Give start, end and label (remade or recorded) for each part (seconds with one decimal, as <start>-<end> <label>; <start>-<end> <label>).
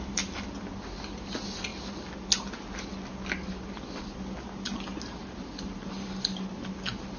0.0-7.2 recorded